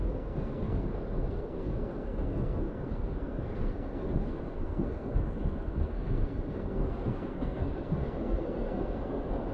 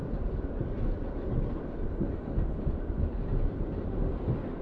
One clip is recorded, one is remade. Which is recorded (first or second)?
second